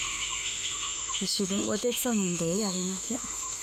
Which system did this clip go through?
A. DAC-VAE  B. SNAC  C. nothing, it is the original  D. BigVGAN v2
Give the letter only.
A